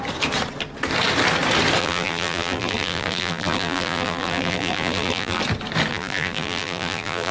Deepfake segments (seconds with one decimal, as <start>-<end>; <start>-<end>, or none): 1.8-5.4; 5.9-7.3